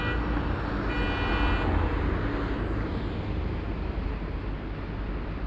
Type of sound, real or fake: real